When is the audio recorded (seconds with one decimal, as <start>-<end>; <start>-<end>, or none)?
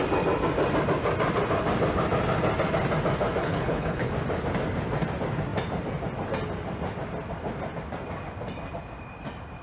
0.0-3.4; 4.1-9.6